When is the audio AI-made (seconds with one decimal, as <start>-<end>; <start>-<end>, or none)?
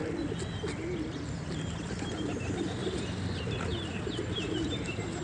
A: none